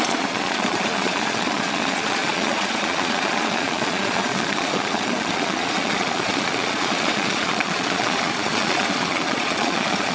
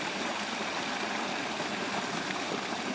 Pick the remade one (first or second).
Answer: first